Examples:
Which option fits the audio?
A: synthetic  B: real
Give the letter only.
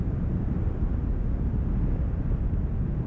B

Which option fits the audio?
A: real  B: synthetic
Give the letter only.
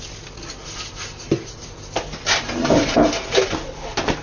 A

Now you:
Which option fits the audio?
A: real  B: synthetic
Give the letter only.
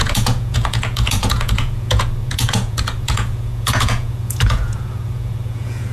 B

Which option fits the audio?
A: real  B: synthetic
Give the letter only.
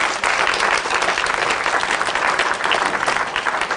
A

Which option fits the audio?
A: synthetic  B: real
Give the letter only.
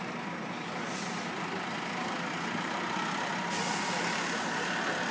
B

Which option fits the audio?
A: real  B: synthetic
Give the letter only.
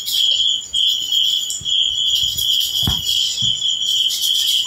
A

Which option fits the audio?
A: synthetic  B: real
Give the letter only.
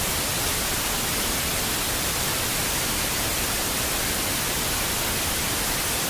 B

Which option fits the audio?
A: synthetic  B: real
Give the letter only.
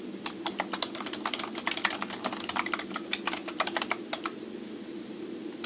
B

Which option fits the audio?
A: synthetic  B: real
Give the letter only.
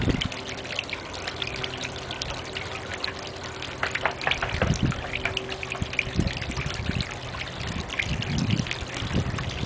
B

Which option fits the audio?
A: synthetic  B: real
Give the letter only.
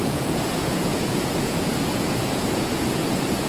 A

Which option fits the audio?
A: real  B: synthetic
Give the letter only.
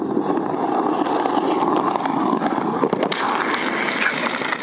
A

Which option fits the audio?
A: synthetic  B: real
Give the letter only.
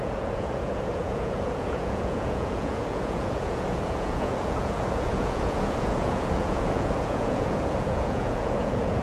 A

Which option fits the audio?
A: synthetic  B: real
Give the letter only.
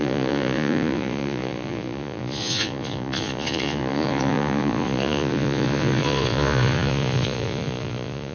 A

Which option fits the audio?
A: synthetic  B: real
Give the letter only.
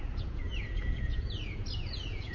A